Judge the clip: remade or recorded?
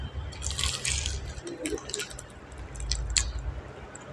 recorded